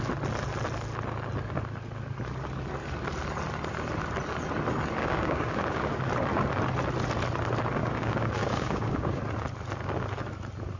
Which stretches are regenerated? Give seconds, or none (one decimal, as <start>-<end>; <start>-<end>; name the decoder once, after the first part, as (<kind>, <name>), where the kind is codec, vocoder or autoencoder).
5.0-6.0 (codec, DAC); 7.8-9.2